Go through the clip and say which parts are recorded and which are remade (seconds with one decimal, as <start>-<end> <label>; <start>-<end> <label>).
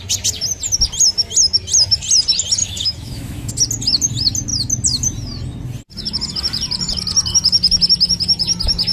0.0-2.6 recorded; 2.6-3.5 remade; 3.5-8.9 recorded